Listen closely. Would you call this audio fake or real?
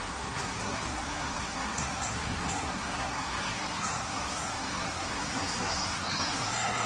fake